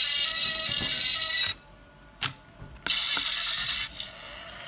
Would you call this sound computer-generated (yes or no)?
no